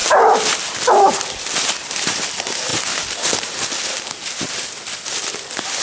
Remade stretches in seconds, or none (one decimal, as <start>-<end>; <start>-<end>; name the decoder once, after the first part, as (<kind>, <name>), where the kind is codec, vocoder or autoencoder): 0.0-2.1 (vocoder, BigVGAN v2)